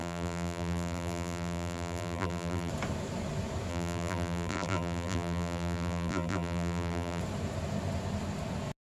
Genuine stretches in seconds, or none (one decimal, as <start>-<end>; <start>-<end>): 2.7-3.7; 7.2-8.9